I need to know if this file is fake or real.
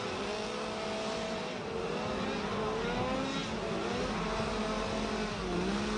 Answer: real